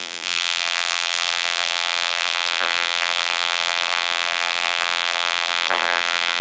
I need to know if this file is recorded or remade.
remade